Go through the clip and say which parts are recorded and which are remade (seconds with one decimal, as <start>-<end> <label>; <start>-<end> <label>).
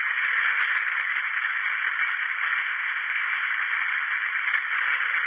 0.0-2.6 recorded; 2.6-3.5 remade; 3.5-5.3 recorded